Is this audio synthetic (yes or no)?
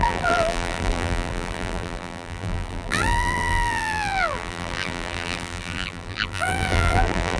yes